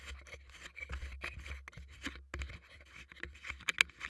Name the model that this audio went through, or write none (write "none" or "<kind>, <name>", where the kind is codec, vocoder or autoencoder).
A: none